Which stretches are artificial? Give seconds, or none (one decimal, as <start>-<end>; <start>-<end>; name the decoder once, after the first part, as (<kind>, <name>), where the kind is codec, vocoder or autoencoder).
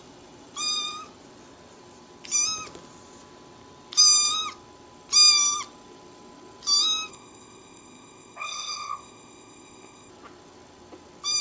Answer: 7.1-10.1 (codec, ZipCodec)